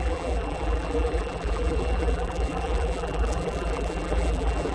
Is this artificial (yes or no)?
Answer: yes